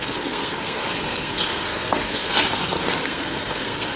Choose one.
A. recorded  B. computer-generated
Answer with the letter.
B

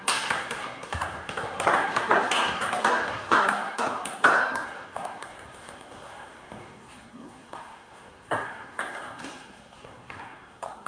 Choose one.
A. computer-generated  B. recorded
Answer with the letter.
A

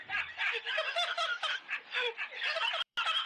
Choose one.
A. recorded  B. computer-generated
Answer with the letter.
A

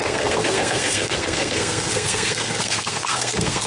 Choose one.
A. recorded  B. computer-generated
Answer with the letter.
B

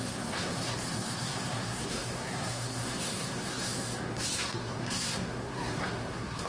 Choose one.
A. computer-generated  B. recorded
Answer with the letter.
A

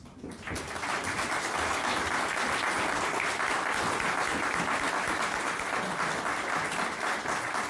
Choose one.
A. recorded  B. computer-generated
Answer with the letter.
A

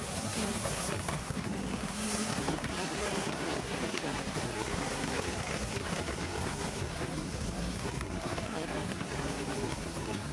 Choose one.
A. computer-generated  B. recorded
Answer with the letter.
A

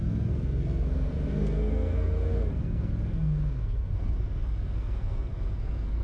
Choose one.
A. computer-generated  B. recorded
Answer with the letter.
A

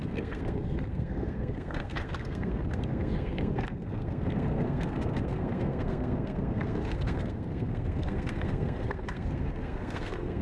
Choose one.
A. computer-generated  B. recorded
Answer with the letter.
A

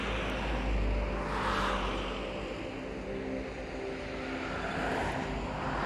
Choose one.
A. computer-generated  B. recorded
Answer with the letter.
B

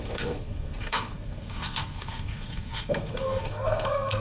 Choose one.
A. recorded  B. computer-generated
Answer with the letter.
B